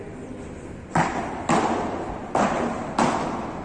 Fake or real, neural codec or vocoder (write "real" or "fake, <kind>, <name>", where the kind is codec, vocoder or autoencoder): real